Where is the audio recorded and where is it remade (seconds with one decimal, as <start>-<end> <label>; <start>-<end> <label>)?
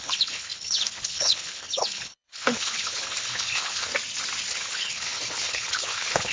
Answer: 0.0-3.9 remade; 3.9-4.5 recorded; 4.5-6.3 remade